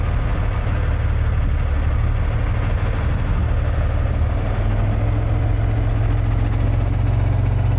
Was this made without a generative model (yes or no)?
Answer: yes